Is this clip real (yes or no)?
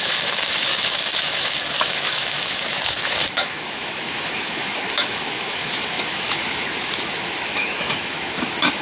no